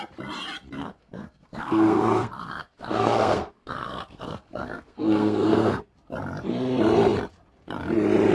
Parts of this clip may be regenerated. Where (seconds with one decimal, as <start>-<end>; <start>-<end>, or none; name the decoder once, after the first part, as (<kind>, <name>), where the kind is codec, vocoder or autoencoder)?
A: 0.8-5.8 (codec, SNAC)